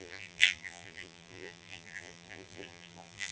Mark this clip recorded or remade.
remade